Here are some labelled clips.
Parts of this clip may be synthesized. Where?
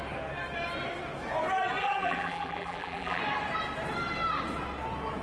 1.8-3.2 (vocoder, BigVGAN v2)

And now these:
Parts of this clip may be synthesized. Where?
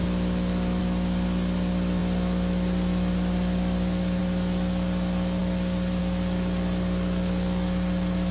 none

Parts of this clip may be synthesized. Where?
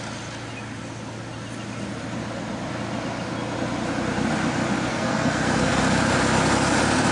4.9-5.8 (codec, SNAC)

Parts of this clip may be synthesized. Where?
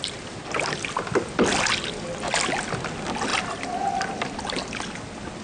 none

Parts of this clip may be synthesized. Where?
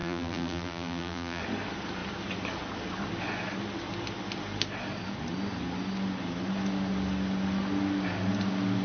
0.0-1.4 (vocoder, BigVGAN v2)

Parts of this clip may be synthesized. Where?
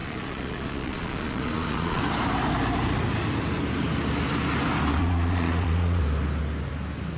0.0-2.0 (vocoder, Vocos); 5.0-6.0